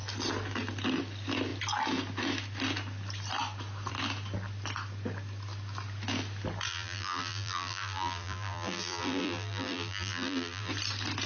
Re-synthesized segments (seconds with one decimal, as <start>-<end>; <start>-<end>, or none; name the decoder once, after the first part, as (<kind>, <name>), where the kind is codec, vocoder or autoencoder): 6.7-10.7 (vocoder, BigVGAN v2)